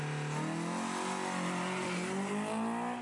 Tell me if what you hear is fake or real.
real